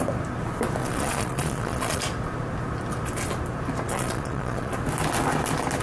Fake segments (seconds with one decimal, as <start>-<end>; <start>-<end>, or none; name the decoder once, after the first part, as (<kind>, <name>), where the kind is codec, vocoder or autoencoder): 0.8-2.0 (vocoder, Vocos); 3.9-4.7

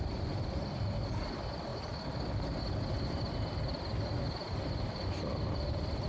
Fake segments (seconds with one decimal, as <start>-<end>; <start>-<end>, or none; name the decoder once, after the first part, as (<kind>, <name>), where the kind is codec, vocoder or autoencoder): none

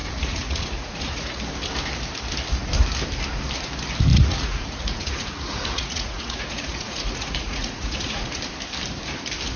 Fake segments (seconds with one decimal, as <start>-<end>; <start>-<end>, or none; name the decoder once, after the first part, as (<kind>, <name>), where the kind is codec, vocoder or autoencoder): 0.0-1.4 (vocoder, Vocos); 4.1-8.4

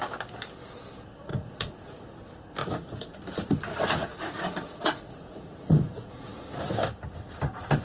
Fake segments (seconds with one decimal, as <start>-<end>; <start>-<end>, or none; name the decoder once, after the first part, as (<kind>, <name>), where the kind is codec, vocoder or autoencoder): 1.3-2.0 (vocoder, Vocos); 2.6-3.2; 3.7-6.1

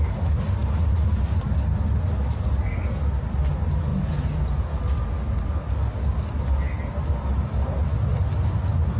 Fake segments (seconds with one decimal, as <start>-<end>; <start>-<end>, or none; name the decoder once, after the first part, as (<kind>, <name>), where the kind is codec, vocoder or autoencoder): 3.9-4.8 (vocoder, Vocos)